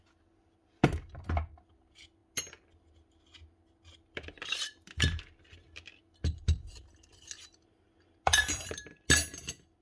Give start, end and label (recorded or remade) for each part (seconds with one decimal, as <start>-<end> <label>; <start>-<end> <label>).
0.0-9.8 recorded